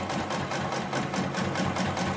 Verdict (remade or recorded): recorded